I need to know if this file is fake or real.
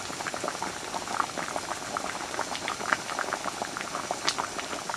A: real